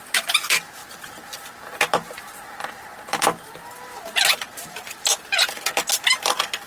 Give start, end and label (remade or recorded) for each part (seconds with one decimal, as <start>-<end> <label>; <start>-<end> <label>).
0.0-0.8 recorded; 0.8-3.2 remade; 3.2-3.9 recorded; 3.9-5.0 remade; 5.0-6.7 recorded